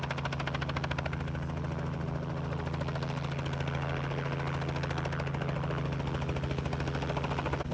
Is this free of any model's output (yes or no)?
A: yes